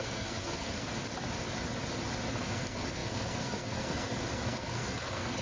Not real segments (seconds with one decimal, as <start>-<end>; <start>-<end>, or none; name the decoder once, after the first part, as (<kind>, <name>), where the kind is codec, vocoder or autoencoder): 0.0-0.9 (codec, SNAC); 2.3-5.4